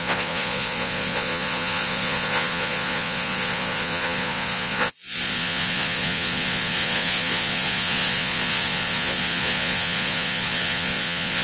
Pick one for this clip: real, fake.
fake